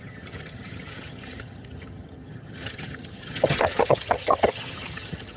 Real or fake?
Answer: fake